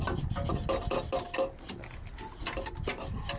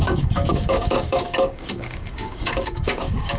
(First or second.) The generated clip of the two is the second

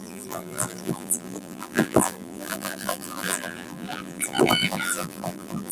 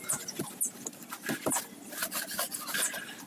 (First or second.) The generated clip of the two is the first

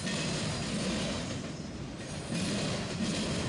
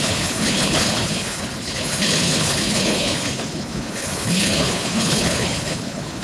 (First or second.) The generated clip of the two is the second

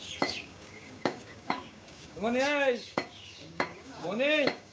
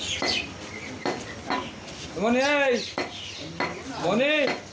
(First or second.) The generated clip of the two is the first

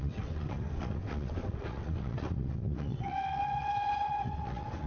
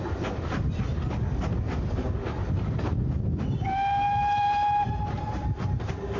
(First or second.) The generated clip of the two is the first